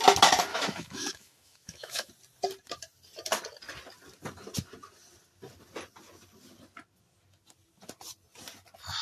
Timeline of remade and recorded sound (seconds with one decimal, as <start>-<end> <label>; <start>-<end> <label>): 0.0-0.5 recorded; 0.5-2.1 remade; 2.1-9.0 recorded